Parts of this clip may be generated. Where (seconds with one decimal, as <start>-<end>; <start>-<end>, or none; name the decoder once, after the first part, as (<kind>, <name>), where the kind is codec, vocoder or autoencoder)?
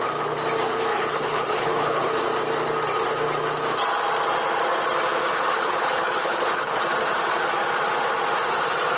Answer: 0.9-2.1 (codec, HILCodec); 5.3-6.8